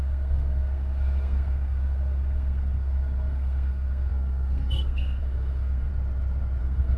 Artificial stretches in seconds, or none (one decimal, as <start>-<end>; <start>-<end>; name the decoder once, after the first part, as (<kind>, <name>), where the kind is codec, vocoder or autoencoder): 0.0-5.9 (codec, SNAC); 6.6-7.0

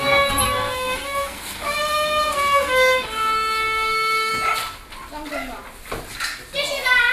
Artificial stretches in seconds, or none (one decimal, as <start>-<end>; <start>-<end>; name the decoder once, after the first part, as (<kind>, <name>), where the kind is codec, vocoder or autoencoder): 0.0-4.3 (codec, SNAC)

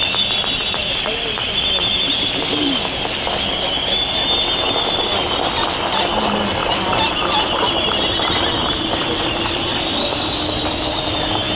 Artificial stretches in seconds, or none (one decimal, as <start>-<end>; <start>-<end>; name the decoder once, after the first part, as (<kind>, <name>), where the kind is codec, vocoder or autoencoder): none

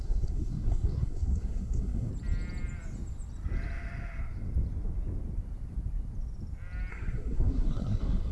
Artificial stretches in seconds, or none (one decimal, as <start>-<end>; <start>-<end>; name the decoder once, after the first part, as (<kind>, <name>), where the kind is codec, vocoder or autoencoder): 0.0-2.1 (codec, SNAC); 6.9-8.3